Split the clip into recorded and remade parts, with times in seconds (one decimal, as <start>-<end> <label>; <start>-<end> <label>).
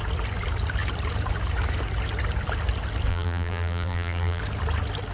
0.0-3.1 recorded; 3.1-4.4 remade; 4.4-5.1 recorded